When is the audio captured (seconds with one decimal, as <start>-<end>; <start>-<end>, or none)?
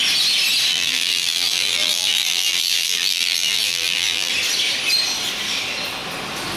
0.0-0.7; 4.3-6.6